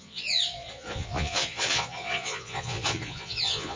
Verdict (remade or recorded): remade